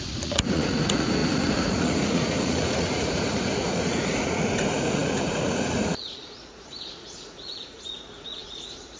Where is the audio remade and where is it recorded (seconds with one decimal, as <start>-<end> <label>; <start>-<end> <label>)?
0.0-9.0 remade